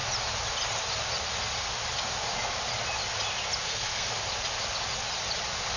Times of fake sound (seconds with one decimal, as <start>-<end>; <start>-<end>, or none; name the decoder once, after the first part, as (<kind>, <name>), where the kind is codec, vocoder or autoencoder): 3.6-4.1 (codec, SNAC)